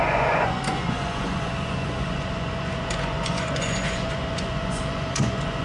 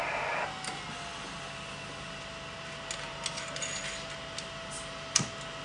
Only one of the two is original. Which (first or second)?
second